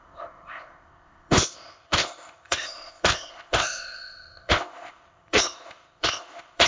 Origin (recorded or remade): remade